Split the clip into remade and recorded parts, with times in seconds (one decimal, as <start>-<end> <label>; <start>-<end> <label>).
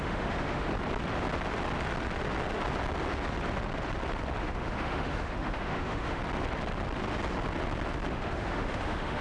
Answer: 0.0-0.7 remade; 0.7-4.4 recorded; 4.4-6.2 remade; 6.2-8.1 recorded; 8.1-9.2 remade